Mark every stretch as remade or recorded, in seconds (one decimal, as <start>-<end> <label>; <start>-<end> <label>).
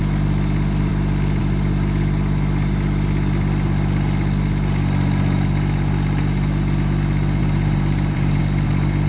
0.0-7.4 recorded; 7.4-8.4 remade; 8.4-9.1 recorded